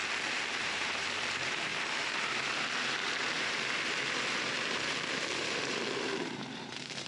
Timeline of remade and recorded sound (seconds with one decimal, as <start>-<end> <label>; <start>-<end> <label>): 0.0-0.6 recorded; 0.6-7.1 remade